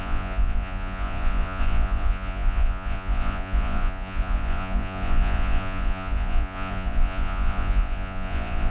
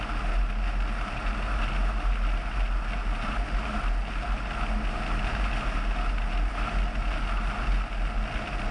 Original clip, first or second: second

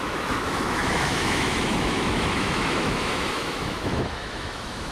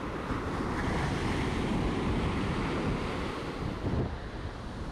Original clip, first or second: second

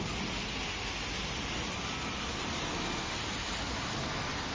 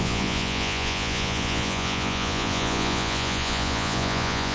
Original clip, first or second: first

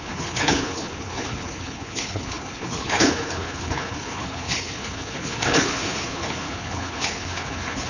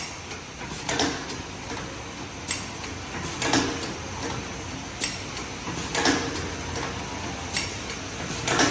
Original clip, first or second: second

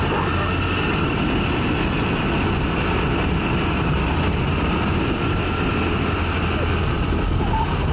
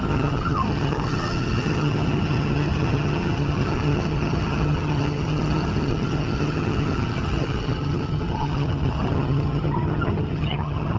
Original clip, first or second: first